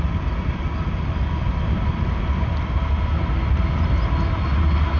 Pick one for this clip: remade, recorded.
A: recorded